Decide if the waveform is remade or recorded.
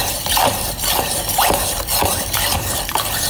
remade